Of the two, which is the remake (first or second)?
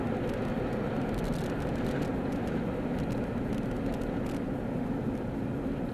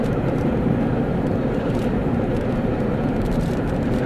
second